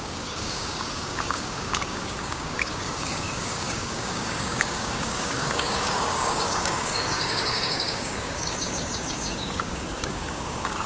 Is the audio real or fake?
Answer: fake